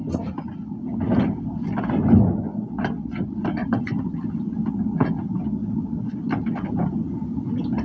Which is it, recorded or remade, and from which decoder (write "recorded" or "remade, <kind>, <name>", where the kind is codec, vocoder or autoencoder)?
recorded